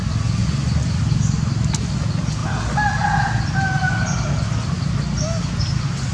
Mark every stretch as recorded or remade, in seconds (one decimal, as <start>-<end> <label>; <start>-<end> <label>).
0.0-0.4 recorded; 0.4-1.0 remade; 1.0-6.1 recorded